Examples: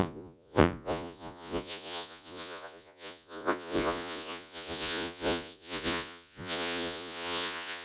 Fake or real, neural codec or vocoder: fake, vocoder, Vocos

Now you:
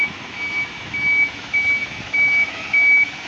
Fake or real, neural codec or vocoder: fake, autoencoder, DAC-VAE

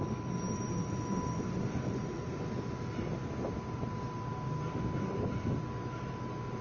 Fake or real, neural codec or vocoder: real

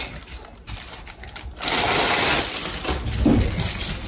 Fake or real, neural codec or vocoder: real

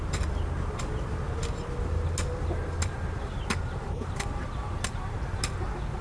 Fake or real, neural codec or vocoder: real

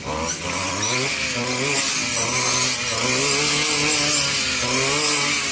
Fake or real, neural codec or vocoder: real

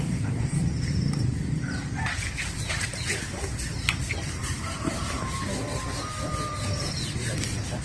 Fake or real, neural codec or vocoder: fake, vocoder, BigVGAN v2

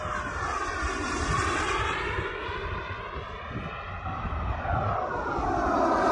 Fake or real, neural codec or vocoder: real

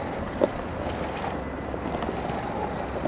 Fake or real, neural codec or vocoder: real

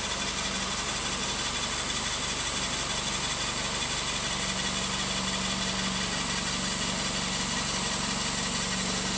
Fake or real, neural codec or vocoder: real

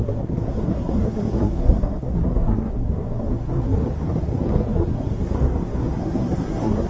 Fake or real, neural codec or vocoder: fake, codec, SNAC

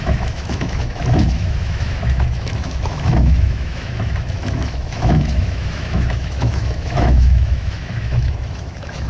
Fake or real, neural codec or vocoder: fake, autoencoder, DAC-VAE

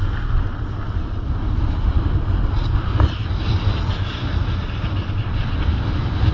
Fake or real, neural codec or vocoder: real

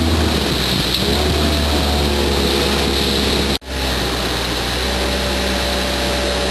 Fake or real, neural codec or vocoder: real